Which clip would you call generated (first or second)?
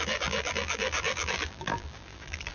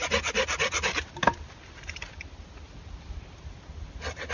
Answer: first